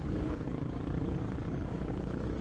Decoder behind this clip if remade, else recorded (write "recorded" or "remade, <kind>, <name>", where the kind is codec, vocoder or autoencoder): remade, codec, DAC